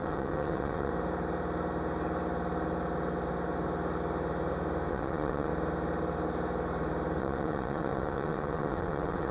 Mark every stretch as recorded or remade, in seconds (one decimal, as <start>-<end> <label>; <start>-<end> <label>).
0.0-0.9 remade; 0.9-4.9 recorded; 4.9-5.5 remade; 5.5-7.2 recorded; 7.2-9.3 remade